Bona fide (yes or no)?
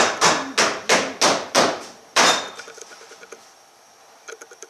yes